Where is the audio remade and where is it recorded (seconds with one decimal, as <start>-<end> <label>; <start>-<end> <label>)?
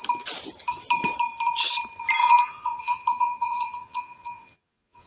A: 0.0-2.2 recorded; 2.2-5.1 remade